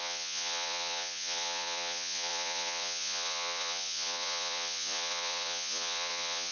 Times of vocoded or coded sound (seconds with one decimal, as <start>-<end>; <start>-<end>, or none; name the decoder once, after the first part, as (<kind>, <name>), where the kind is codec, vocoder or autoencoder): 0.0-6.5 (vocoder, Vocos)